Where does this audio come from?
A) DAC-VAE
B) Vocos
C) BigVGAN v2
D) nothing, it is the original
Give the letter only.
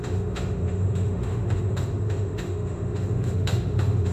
A